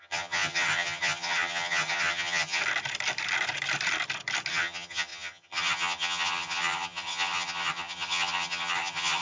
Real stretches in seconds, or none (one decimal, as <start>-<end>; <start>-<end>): 2.6-4.5